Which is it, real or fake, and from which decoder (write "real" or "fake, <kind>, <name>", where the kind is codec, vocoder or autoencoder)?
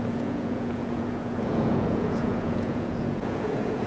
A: fake, vocoder, Vocos